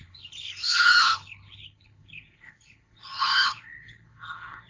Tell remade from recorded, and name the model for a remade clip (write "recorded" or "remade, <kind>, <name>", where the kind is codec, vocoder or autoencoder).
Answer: remade, codec, HILCodec